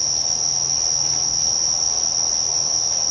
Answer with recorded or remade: recorded